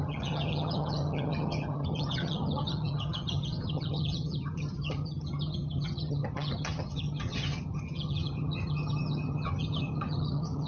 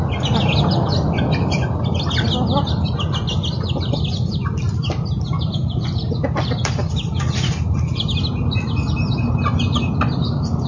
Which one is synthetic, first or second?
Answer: first